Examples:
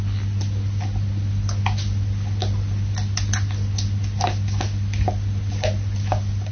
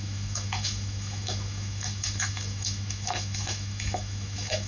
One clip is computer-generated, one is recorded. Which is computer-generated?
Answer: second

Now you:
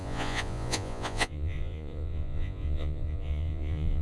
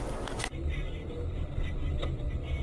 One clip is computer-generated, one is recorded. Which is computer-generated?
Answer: first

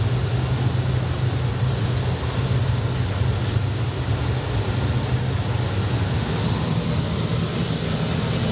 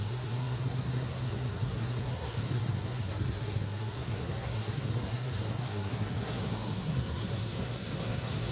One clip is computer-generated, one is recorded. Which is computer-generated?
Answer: second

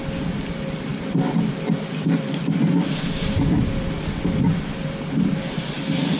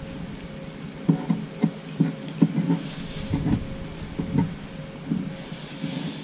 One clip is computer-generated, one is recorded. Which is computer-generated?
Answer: first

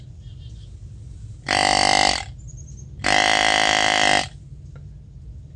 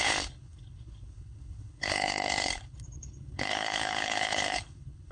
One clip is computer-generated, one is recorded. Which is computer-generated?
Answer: second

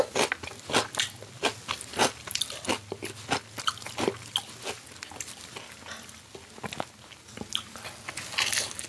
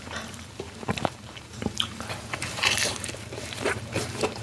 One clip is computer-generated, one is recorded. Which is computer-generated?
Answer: second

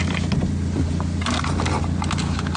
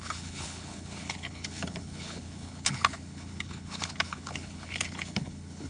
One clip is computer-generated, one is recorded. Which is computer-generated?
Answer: second